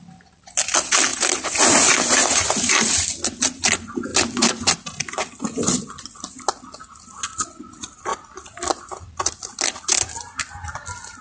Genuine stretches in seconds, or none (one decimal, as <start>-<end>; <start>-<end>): 0.0-1.1; 3.1-4.1; 6.3-8.1